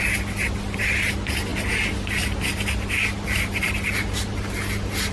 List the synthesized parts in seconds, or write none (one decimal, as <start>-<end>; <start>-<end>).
none